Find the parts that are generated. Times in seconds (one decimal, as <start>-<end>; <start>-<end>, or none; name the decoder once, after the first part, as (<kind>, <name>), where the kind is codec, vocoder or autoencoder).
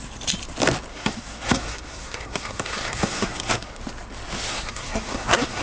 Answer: 0.9-3.8 (codec, SNAC); 4.5-5.6